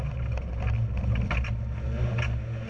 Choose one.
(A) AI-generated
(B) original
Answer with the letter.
B